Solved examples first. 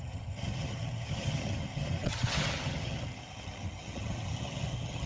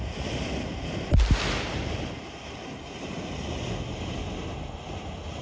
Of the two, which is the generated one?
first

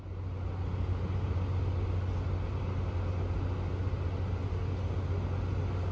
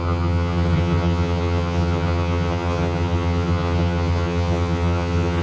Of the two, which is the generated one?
second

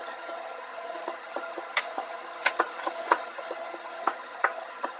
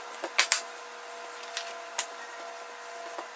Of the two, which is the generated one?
first